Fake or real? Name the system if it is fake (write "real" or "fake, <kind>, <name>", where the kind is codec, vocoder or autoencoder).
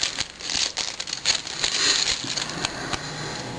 real